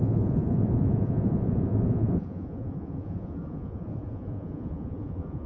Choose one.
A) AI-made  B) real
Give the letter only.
A